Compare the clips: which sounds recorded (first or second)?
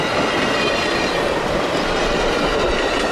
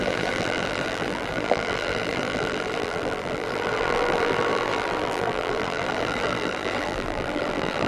first